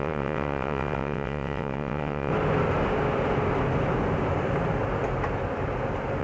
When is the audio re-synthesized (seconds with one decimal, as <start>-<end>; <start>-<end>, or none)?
0.0-2.3